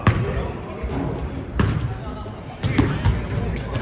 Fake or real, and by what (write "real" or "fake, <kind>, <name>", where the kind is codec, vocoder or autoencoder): real